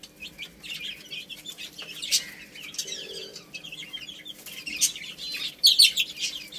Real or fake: real